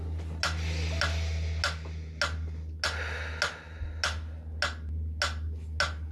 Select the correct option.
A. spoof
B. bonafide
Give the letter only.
B